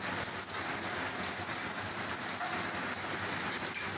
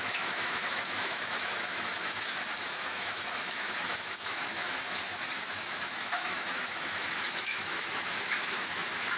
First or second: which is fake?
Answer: second